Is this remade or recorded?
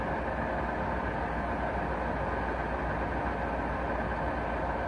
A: recorded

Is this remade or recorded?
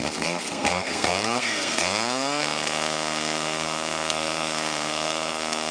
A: remade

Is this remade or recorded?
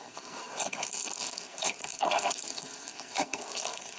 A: remade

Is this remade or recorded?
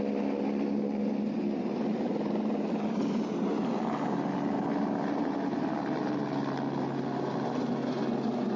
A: recorded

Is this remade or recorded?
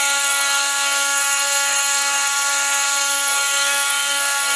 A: remade